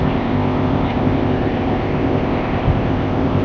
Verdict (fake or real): fake